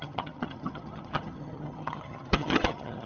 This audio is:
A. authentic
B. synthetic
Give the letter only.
B